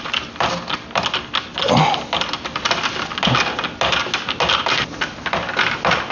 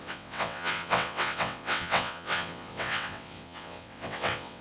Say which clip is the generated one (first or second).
second